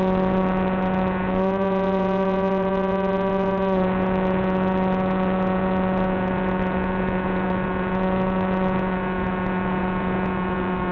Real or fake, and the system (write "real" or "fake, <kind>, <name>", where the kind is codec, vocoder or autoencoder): fake, vocoder, Vocos